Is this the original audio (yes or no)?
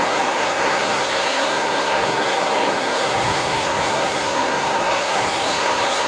no